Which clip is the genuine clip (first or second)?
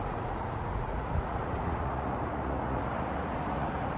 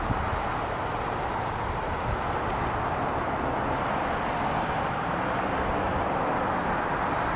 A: second